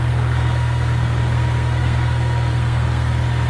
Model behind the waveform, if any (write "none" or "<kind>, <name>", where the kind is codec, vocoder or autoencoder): codec, SNAC